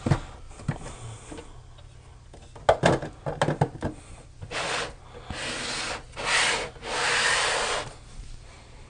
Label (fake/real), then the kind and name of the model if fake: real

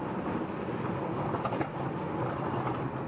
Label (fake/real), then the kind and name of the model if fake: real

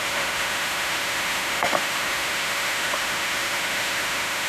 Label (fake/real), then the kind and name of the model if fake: fake, autoencoder, DAC-VAE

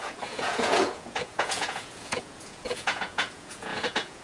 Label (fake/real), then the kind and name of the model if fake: fake, vocoder, Vocos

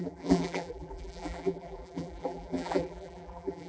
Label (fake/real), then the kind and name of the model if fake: fake, vocoder, BigVGAN v2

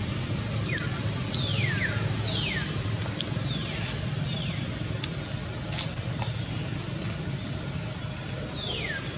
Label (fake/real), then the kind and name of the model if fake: real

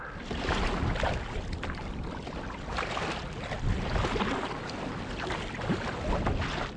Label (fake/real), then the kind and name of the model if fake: real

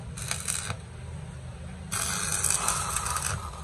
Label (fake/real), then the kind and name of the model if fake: real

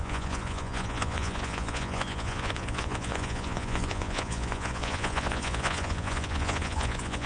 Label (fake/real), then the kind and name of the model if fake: fake, vocoder, Vocos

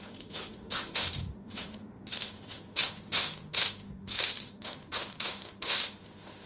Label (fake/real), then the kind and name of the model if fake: fake, autoencoder, DAC-VAE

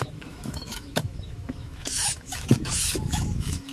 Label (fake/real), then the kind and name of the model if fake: fake, autoencoder, DAC-VAE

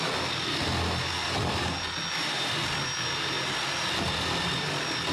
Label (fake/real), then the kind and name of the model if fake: real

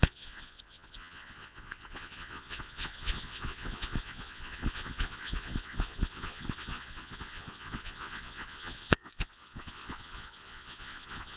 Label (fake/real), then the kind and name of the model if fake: fake, vocoder, Vocos